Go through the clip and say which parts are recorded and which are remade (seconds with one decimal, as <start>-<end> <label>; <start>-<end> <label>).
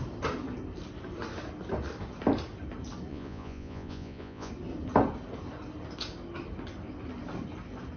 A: 0.0-3.1 recorded; 3.1-4.5 remade; 4.5-8.0 recorded